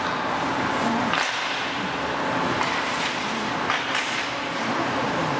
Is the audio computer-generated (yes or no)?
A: no